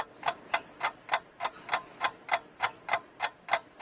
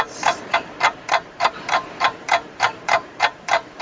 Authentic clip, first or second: first